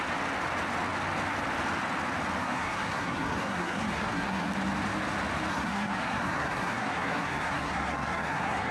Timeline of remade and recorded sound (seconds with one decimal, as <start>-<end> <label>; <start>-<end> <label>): 0.0-2.4 recorded; 2.4-4.5 remade; 4.5-5.5 recorded; 5.5-8.7 remade